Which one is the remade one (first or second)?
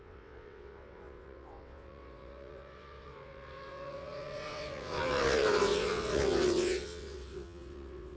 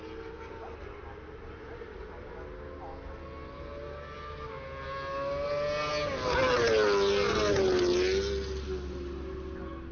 first